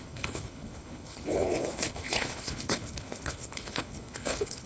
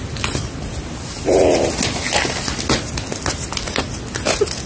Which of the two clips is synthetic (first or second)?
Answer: first